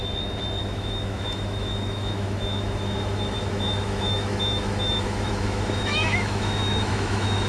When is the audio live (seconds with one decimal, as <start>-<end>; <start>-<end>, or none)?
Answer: 0.0-0.6